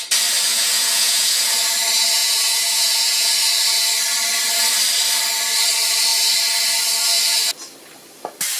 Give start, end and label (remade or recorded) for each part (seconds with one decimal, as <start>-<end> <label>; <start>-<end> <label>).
0.0-0.5 recorded; 0.5-1.5 remade; 1.5-2.2 recorded; 2.2-3.3 remade; 3.3-8.6 recorded